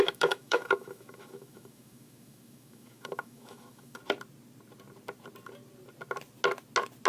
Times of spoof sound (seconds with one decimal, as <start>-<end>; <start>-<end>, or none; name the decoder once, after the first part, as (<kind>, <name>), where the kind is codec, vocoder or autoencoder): 0.0-4.0 (autoencoder, DAC-VAE)